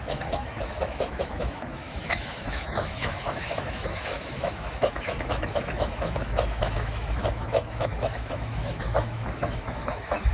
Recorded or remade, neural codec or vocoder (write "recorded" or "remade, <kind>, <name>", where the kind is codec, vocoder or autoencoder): remade, autoencoder, DAC-VAE